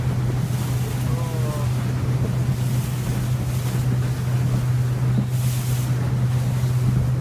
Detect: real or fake real